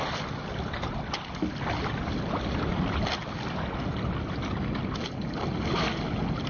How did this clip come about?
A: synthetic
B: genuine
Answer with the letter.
B